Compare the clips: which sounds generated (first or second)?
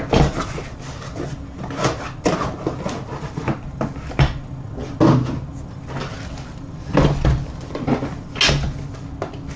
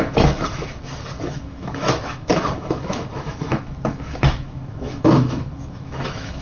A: second